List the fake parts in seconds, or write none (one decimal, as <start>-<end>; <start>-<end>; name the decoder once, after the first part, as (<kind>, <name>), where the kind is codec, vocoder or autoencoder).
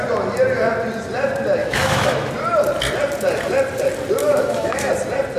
1.6-2.3 (autoencoder, DAC-VAE); 4.2-4.9